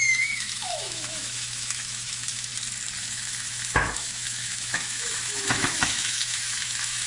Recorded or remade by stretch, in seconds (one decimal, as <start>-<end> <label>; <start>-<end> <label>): 0.0-2.5 remade; 2.5-3.0 recorded; 3.0-7.1 remade

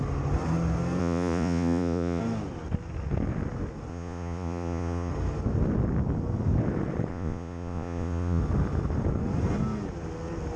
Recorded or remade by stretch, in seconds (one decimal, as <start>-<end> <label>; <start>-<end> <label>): 0.0-1.0 recorded; 1.0-2.2 remade; 2.2-3.9 recorded; 3.9-5.1 remade; 5.1-7.1 recorded; 7.1-8.4 remade; 8.4-10.6 recorded

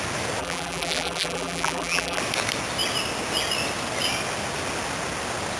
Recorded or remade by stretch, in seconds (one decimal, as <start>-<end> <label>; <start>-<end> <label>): 0.0-0.4 recorded; 0.4-2.2 remade; 2.2-5.6 recorded

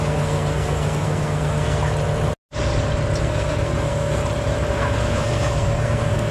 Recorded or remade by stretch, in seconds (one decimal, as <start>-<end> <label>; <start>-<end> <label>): 0.0-1.8 remade; 1.8-3.2 recorded; 3.2-4.2 remade; 4.2-4.7 recorded; 4.7-6.3 remade

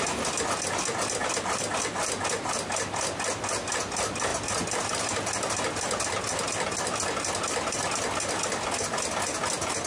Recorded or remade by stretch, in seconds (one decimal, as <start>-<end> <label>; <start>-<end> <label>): 0.0-1.2 recorded; 1.2-2.5 remade; 2.5-4.3 recorded; 4.3-4.9 remade; 4.9-9.9 recorded